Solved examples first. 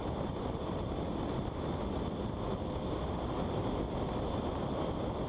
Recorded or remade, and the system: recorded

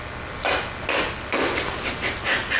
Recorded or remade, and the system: recorded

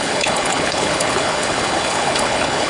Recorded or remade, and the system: remade, codec, HILCodec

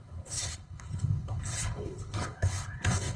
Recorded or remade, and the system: remade, codec, HILCodec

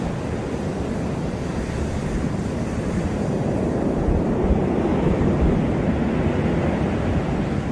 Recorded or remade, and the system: recorded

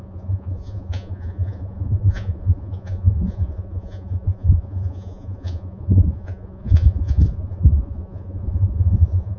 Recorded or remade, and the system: remade, vocoder, Vocos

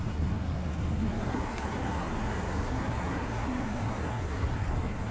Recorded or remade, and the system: remade, codec, SNAC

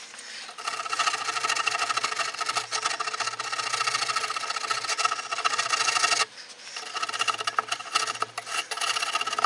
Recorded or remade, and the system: remade, vocoder, BigVGAN v2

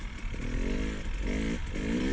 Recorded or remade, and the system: recorded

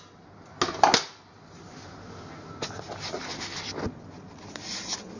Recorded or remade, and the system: recorded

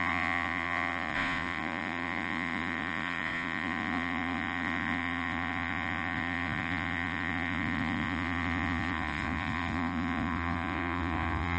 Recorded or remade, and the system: remade, vocoder, Vocos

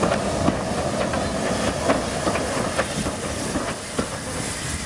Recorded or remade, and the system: recorded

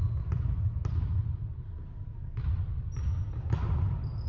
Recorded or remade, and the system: recorded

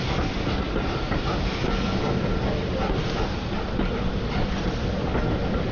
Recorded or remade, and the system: recorded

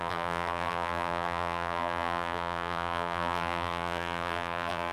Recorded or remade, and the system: remade, vocoder, BigVGAN v2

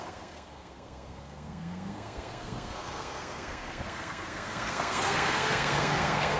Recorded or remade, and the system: remade, codec, SNAC